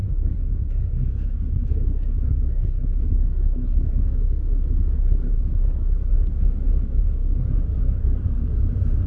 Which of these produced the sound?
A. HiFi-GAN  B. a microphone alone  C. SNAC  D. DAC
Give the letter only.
C